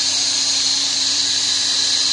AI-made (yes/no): yes